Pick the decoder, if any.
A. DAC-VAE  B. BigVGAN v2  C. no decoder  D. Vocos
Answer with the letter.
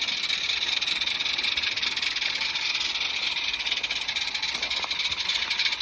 C